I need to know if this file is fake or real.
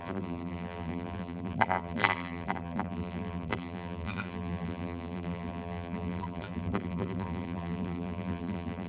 fake